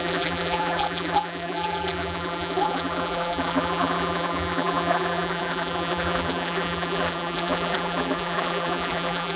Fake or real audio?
fake